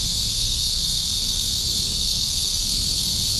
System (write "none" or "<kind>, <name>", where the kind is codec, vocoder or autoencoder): codec, SNAC